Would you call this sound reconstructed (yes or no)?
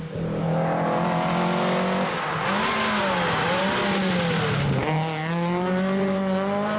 no